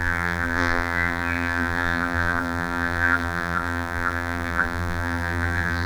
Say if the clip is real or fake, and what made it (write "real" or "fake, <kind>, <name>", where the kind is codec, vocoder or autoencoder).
fake, vocoder, BigVGAN v2